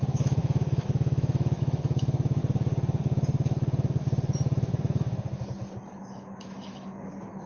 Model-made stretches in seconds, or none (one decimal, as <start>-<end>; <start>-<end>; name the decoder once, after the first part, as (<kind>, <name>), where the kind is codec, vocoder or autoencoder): 0.0-2.4 (autoencoder, DAC-VAE); 6.0-7.5

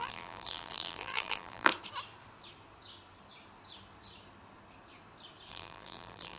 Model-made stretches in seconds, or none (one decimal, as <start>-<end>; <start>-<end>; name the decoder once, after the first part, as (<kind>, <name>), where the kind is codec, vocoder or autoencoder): 0.0-1.7 (vocoder, BigVGAN v2); 5.5-6.4

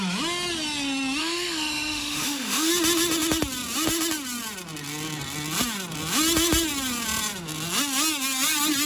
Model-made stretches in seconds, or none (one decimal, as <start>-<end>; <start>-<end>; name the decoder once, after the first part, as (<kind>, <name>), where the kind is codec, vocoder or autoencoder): 1.2-2.7 (autoencoder, DAC-VAE)